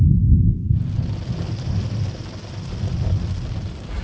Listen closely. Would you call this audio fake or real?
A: real